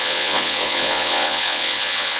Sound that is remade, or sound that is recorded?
remade